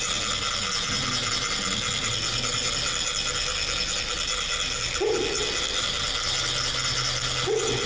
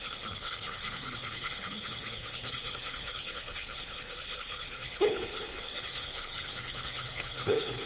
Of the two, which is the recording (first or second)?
first